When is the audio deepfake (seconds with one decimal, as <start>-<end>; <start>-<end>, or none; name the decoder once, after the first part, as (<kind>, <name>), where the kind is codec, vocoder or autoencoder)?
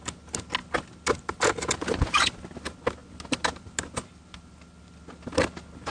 none